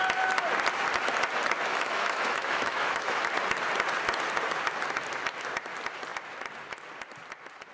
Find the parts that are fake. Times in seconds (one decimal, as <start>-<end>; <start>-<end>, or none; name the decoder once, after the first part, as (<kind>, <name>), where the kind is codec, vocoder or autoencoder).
1.7-3.3 (autoencoder, DAC-VAE)